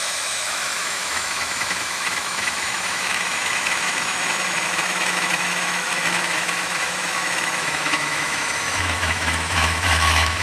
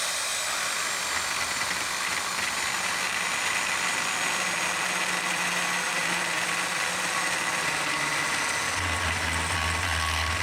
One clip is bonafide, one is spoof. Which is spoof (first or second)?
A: first